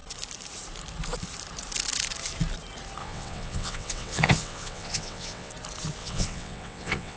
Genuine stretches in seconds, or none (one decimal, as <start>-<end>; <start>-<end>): 0.0-3.0; 5.5-6.0